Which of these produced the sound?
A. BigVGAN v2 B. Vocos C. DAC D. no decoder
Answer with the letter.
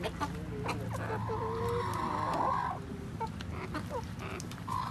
D